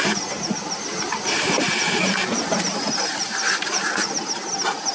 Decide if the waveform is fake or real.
fake